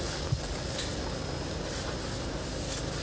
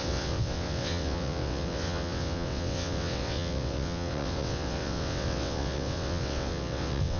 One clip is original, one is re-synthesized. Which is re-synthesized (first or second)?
second